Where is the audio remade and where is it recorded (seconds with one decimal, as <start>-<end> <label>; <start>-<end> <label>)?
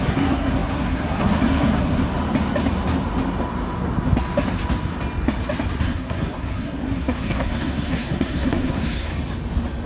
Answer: 0.0-2.1 remade; 2.1-5.8 recorded; 5.8-9.1 remade; 9.1-9.9 recorded